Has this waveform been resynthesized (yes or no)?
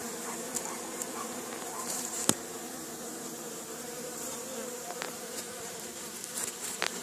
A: yes